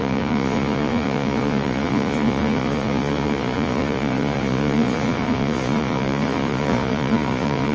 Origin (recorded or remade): remade